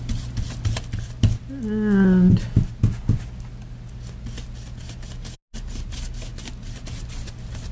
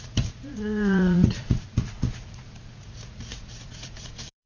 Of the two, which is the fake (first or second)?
second